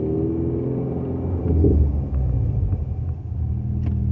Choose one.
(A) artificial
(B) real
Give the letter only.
B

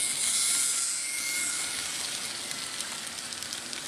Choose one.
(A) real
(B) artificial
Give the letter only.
A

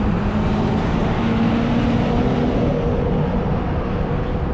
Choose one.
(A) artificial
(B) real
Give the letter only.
B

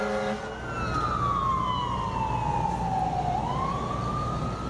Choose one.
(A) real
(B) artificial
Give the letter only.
A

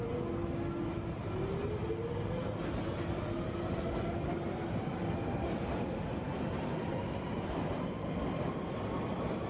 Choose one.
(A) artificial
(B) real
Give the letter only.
B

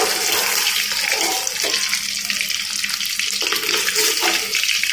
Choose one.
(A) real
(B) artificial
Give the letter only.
A